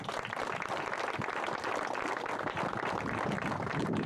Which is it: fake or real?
real